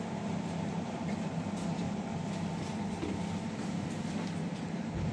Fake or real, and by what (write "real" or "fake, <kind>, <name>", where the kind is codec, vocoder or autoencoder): fake, vocoder, BigVGAN v2